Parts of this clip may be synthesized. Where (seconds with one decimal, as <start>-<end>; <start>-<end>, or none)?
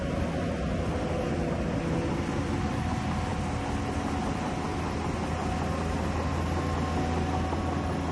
none